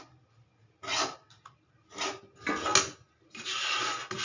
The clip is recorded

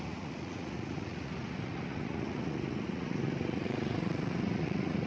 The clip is remade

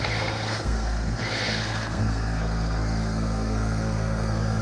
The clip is remade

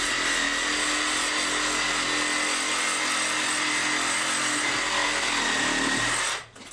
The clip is recorded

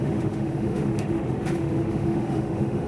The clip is remade